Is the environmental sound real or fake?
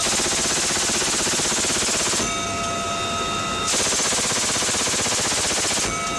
real